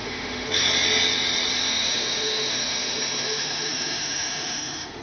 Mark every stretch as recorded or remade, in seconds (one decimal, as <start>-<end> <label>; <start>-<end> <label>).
0.0-0.5 remade; 0.5-1.7 recorded; 1.7-5.0 remade

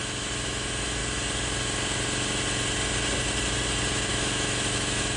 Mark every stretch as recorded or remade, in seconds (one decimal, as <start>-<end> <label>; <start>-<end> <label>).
0.0-1.0 remade; 1.0-4.1 recorded; 4.1-5.2 remade

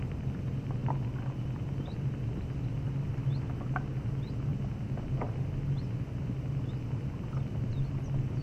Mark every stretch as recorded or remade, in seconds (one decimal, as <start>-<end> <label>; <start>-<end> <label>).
0.0-8.4 recorded

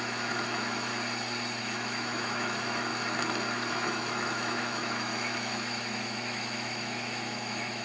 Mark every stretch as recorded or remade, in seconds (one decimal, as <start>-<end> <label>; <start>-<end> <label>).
0.0-0.9 remade; 0.9-1.6 recorded; 1.6-2.9 remade; 2.9-3.7 recorded; 3.7-7.8 remade

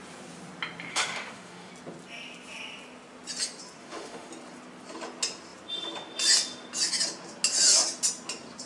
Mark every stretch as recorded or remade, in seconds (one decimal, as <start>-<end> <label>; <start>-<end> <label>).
0.0-0.9 recorded; 0.9-1.7 remade; 1.7-3.8 recorded; 3.8-4.3 remade; 4.3-8.7 recorded

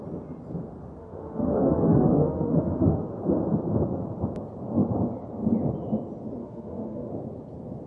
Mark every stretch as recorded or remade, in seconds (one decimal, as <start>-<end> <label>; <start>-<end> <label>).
0.0-1.0 recorded; 1.0-3.1 remade; 3.1-6.4 recorded; 6.4-7.1 remade; 7.1-7.9 recorded

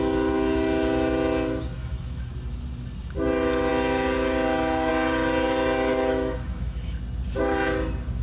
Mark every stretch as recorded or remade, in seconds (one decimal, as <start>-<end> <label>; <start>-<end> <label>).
0.0-1.8 recorded; 1.8-2.3 remade; 2.3-5.9 recorded; 5.9-7.0 remade; 7.0-8.2 recorded